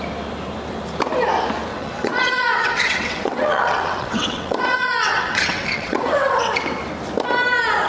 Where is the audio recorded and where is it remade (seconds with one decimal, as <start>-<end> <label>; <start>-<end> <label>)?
0.0-1.7 recorded; 1.7-6.4 remade; 6.4-7.9 recorded